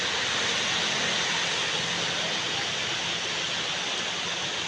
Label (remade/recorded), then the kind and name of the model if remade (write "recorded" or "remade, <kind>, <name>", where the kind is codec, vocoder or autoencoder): recorded